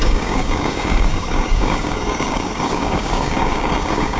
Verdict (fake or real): fake